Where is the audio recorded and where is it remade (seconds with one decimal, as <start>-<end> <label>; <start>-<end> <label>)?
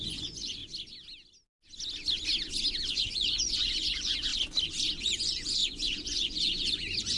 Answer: 0.0-0.6 remade; 0.6-2.9 recorded; 2.9-4.3 remade; 4.3-5.0 recorded; 5.0-7.2 remade